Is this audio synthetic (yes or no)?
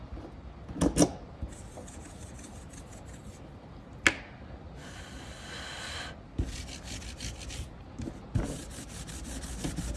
no